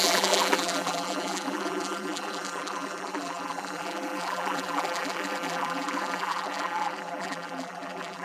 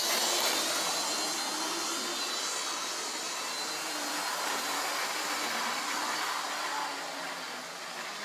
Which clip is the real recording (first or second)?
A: second